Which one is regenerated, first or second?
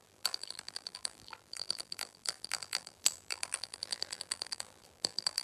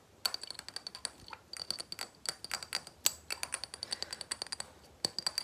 first